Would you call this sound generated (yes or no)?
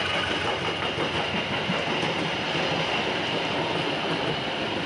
no